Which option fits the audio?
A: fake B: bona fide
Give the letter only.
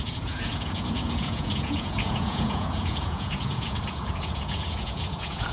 A